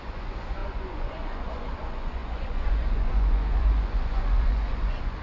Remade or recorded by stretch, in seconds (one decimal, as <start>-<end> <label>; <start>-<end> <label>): 0.0-5.2 remade